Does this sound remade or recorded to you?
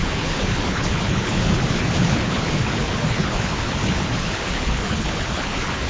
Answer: remade